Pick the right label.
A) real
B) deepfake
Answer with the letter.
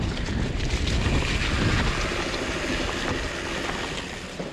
A